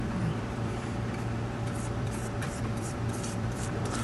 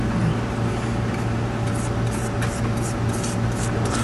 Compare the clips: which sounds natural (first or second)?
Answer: second